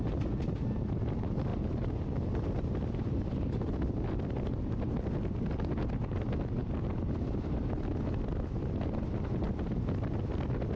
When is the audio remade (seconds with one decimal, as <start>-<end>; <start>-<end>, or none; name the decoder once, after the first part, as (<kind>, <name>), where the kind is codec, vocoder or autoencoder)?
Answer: none